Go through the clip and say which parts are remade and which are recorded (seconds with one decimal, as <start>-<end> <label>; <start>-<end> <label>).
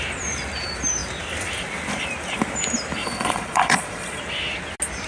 0.0-3.0 recorded; 3.0-4.2 remade; 4.2-5.1 recorded